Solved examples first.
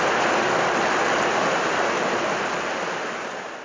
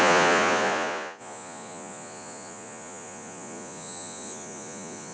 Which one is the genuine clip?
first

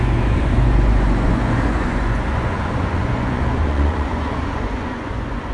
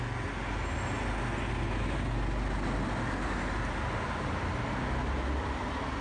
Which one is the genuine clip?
second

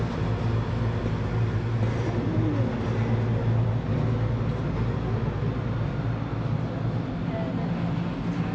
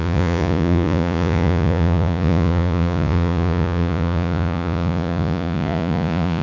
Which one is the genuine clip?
first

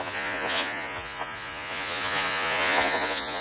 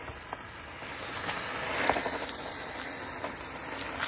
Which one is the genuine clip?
second